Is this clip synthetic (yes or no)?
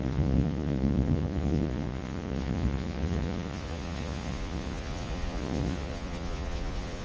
yes